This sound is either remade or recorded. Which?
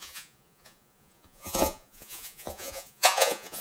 remade